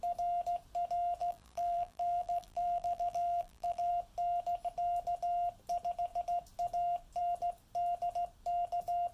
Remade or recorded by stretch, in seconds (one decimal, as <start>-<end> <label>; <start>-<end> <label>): 0.0-1.2 recorded; 1.2-3.9 remade; 3.9-9.1 recorded